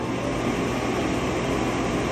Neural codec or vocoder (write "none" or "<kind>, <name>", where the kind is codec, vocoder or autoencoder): none